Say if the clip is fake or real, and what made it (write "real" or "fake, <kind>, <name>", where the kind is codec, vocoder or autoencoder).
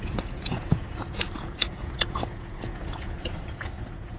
fake, vocoder, Vocos